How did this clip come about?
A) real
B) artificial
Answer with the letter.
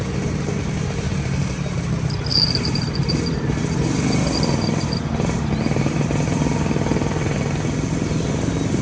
A